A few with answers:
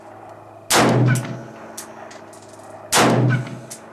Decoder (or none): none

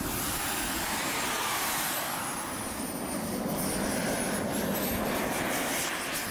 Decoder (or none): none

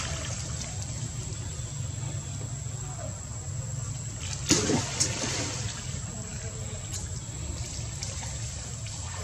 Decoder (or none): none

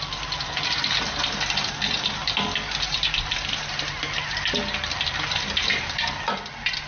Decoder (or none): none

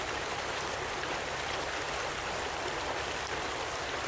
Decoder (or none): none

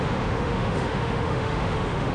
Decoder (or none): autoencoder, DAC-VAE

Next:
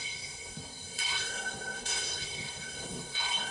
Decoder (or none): codec, SNAC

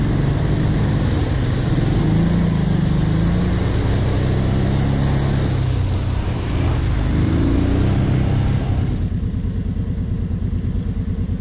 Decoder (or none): none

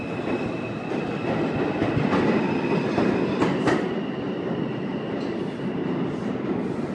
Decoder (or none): none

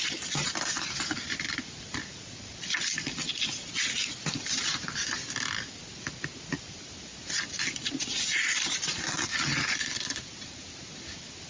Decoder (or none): none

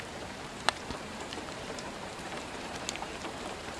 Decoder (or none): vocoder, BigVGAN v2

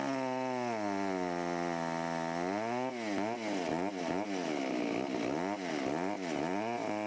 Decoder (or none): none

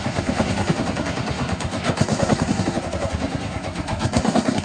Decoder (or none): codec, SNAC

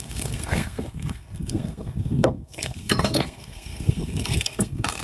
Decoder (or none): codec, SNAC